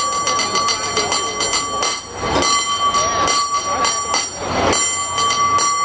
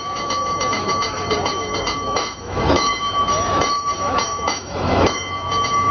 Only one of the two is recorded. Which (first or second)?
first